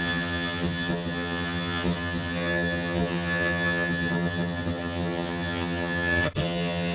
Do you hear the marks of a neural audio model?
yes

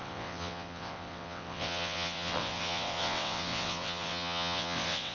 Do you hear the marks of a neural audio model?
yes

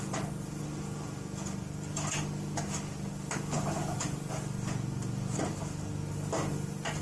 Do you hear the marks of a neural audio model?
yes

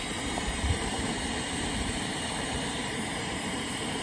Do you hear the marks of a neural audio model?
yes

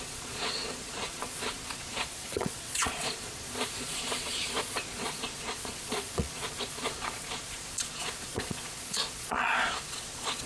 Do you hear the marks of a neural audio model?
yes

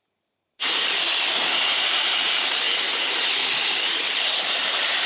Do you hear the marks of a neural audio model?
yes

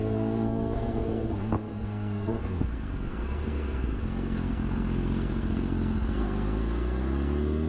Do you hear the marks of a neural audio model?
yes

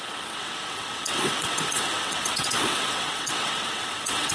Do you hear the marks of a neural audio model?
yes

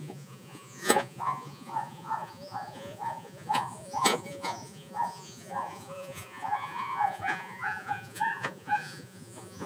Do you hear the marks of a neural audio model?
yes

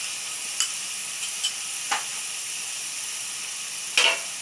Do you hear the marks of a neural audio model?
no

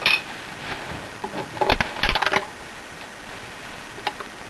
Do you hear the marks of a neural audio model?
yes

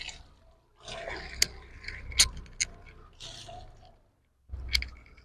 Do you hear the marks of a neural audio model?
no